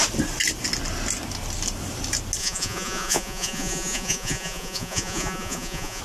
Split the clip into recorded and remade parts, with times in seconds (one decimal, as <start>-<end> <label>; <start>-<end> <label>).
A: 0.0-2.4 recorded; 2.4-6.0 remade

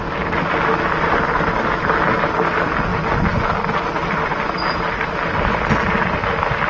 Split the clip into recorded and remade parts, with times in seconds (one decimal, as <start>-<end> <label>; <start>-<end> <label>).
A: 0.0-6.7 recorded

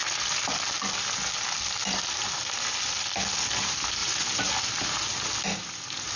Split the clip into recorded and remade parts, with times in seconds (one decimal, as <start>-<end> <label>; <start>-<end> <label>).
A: 0.0-6.2 recorded

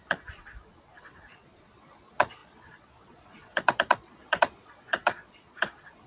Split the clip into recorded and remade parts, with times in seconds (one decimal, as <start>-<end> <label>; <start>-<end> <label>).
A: 0.0-6.1 remade

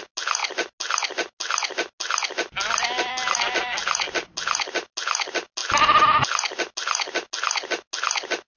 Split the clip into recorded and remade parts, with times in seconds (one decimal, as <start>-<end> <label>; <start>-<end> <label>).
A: 0.0-8.6 recorded

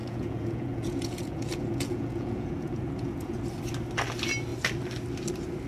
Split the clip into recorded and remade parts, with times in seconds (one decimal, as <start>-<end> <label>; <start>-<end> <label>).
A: 0.0-3.4 remade; 3.4-5.7 recorded

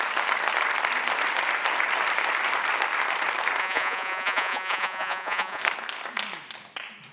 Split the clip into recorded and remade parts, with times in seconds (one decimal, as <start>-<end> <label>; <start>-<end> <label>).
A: 0.0-3.6 recorded; 3.6-5.6 remade; 5.6-7.1 recorded